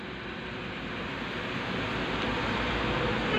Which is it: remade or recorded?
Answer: recorded